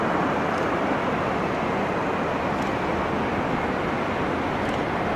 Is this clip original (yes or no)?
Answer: yes